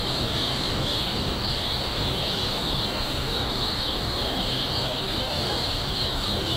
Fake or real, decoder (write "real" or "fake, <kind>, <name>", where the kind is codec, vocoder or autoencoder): fake, codec, DAC